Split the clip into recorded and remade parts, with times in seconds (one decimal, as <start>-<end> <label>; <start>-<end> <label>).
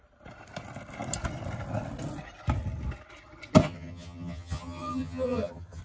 0.0-3.6 recorded; 3.6-5.8 remade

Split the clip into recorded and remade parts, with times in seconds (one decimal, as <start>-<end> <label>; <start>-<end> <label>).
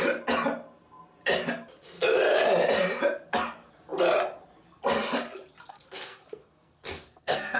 0.0-5.7 recorded; 5.7-7.6 remade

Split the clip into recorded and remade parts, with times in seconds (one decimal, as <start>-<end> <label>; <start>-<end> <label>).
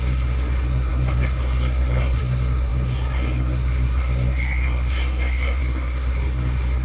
0.0-6.8 remade